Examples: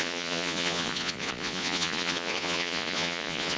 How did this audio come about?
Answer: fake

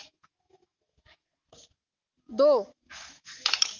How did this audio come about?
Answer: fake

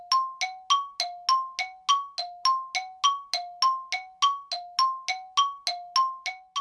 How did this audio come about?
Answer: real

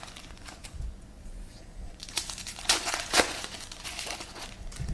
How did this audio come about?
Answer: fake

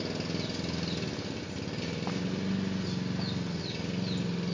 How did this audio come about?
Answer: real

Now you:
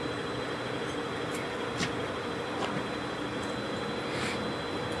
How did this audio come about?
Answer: real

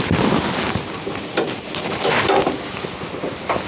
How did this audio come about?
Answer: real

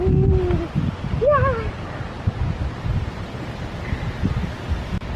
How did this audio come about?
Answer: real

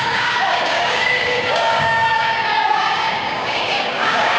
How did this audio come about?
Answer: fake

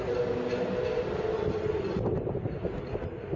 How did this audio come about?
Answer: real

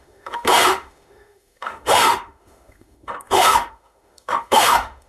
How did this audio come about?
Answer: fake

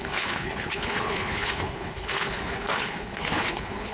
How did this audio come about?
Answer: fake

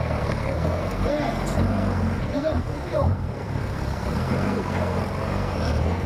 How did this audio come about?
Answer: fake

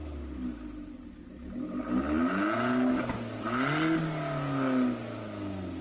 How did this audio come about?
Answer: real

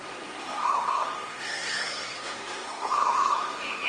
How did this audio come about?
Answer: fake